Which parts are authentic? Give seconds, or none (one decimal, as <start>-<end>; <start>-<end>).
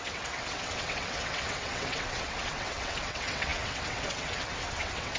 none